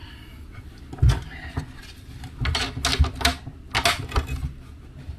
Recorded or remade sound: recorded